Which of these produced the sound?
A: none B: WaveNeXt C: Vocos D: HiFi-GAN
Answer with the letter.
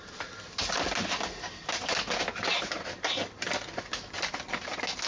A